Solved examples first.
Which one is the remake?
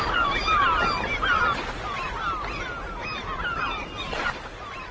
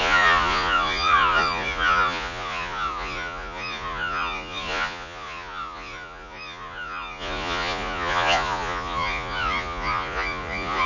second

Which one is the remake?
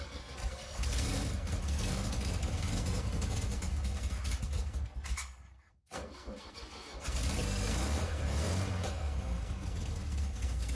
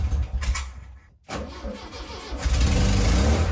first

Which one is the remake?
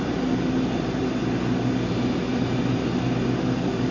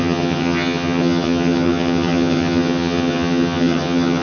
second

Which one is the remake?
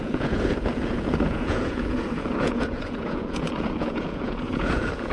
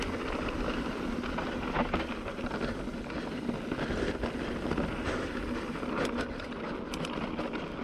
first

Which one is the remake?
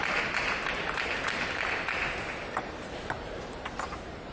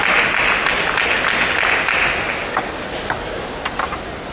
first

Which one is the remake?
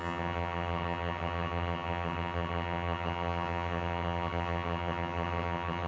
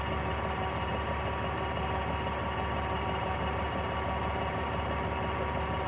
first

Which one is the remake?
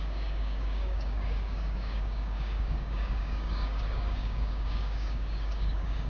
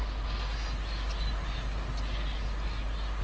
first